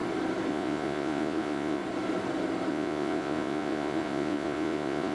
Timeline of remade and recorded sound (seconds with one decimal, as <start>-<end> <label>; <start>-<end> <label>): 0.0-0.5 recorded; 0.5-1.8 remade; 1.8-2.7 recorded; 2.7-5.1 remade